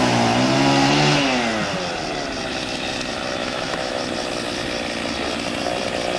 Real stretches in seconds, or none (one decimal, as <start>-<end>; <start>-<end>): 0.0-3.4; 4.0-6.2